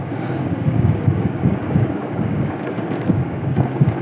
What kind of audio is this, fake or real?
fake